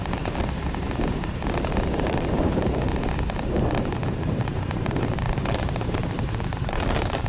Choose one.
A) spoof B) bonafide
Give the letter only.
A